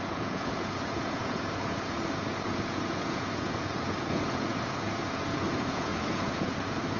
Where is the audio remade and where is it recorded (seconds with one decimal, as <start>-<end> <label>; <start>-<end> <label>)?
0.0-7.0 remade